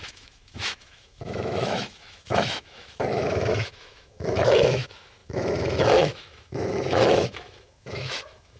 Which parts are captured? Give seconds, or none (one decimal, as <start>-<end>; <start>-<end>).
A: none